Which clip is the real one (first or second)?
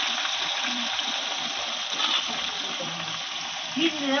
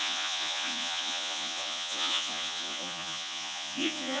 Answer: first